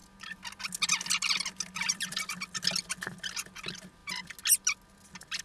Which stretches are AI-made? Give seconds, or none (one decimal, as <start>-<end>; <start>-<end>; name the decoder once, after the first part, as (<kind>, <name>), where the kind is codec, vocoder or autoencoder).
none